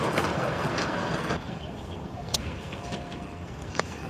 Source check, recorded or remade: remade